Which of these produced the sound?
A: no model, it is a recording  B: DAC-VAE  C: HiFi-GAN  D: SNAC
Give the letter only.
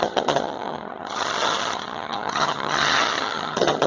C